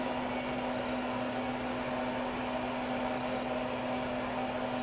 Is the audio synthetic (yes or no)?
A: no